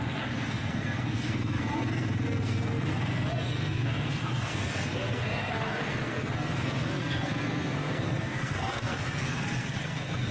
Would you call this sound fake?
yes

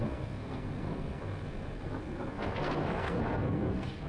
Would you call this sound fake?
yes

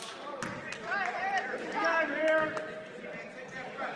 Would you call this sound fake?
no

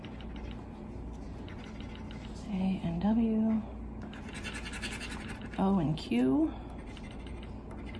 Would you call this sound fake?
no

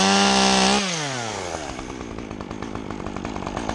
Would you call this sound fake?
no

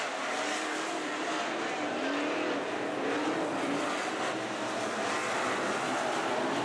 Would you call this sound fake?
no